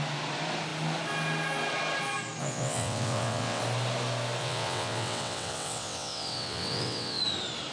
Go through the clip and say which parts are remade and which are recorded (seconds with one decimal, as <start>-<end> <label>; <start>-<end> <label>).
0.0-2.4 recorded; 2.4-3.6 remade; 3.6-4.4 recorded; 4.4-7.2 remade; 7.2-7.7 recorded